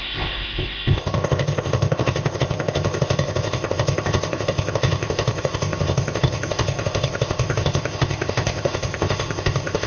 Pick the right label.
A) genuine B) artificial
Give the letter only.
B